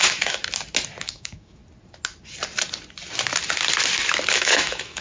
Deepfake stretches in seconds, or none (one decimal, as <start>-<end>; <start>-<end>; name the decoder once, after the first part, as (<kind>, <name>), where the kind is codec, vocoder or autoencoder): 0.0-0.4 (autoencoder, DAC-VAE); 1.0-1.6; 4.3-5.0